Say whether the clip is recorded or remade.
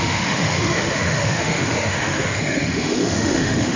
remade